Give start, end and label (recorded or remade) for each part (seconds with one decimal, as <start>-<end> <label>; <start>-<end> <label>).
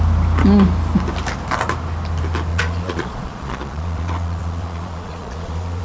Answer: 0.0-2.5 recorded; 2.5-5.8 remade